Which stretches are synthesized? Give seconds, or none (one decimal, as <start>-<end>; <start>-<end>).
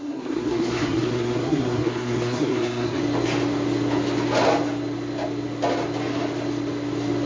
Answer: 0.0-3.0